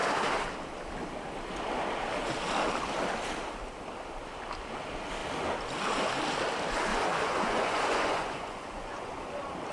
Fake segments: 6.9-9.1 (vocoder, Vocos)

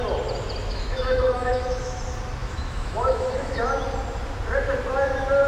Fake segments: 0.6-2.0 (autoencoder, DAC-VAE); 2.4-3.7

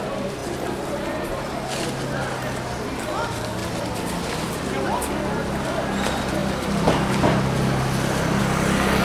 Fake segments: none